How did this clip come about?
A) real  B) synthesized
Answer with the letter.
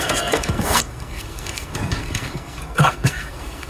B